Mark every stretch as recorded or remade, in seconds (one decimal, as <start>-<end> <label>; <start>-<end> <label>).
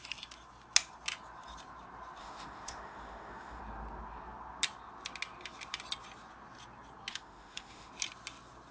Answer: 0.0-2.2 recorded; 2.2-3.6 remade; 3.6-7.1 recorded; 7.1-7.9 remade; 7.9-8.7 recorded